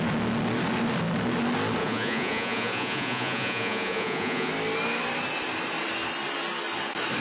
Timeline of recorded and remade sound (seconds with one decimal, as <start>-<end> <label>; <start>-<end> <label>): 0.0-1.8 recorded; 1.8-4.5 remade; 4.5-7.2 recorded